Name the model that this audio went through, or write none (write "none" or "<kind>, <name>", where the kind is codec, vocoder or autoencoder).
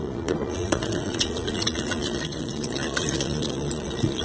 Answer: vocoder, Vocos